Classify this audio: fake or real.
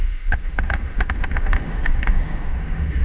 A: fake